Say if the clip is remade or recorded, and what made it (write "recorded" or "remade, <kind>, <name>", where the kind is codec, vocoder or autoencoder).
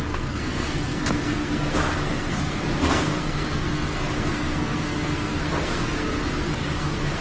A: remade, codec, SNAC